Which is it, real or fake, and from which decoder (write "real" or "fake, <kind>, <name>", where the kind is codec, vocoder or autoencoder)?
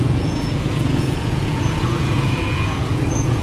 fake, vocoder, Vocos